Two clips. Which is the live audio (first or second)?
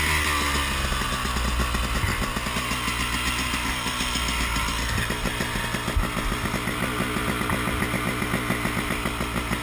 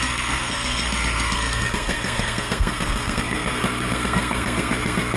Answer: first